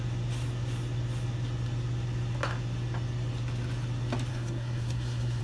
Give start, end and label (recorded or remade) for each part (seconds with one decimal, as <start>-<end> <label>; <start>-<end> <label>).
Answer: 0.0-4.3 recorded; 4.3-5.4 remade